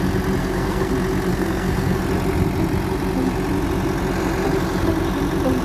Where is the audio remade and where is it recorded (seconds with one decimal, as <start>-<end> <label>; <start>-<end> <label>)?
0.0-0.4 recorded; 0.4-0.9 remade; 0.9-1.3 recorded; 1.3-2.0 remade; 2.0-5.6 recorded